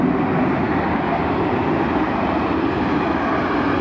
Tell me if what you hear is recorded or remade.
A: recorded